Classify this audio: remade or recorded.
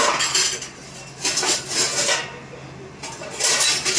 recorded